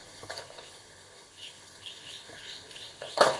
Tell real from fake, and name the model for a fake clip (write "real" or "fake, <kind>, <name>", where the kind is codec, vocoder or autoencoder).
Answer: fake, codec, HILCodec